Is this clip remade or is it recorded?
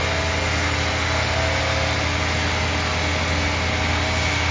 recorded